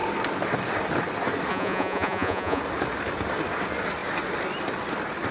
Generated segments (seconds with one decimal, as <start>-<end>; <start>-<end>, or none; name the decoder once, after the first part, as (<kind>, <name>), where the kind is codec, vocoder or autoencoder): 1.5-2.6 (vocoder, Vocos)